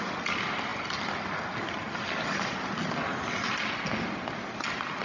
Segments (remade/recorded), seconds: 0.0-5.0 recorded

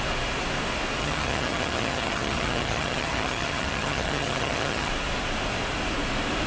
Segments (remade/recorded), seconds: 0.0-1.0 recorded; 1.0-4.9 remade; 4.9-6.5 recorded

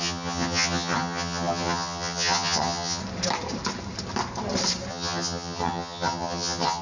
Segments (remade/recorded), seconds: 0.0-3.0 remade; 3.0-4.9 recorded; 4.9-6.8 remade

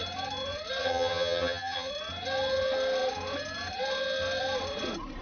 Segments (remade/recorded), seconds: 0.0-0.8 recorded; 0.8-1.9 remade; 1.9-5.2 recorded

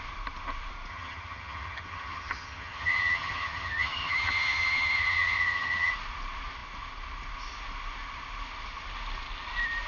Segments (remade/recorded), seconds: 0.0-0.9 recorded; 0.9-5.9 remade; 5.9-9.9 recorded

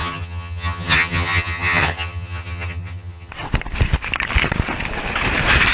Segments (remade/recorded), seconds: 0.0-3.3 remade; 3.3-5.7 recorded

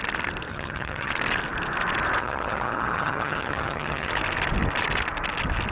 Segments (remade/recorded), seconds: 0.0-0.5 recorded; 0.5-1.1 remade; 1.1-2.2 recorded; 2.2-4.1 remade; 4.1-5.7 recorded

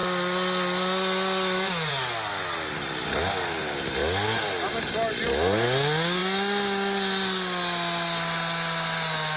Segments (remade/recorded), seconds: 0.0-9.4 recorded